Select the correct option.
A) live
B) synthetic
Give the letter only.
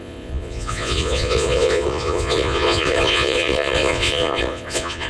B